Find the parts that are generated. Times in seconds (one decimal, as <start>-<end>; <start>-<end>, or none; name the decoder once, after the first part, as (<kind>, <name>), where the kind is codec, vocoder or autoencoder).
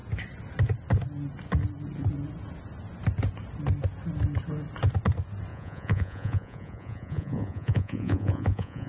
5.5-8.9 (vocoder, Vocos)